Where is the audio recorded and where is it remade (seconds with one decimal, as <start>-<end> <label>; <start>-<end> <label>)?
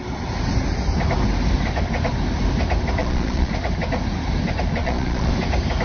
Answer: 0.0-3.0 recorded; 3.0-3.5 remade; 3.5-4.8 recorded; 4.8-5.3 remade; 5.3-5.8 recorded